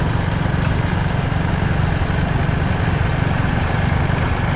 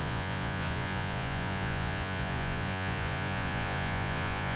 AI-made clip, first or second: second